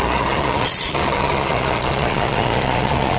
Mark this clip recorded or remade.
remade